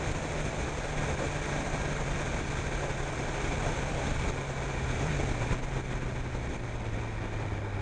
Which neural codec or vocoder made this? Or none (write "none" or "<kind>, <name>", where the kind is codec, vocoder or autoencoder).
none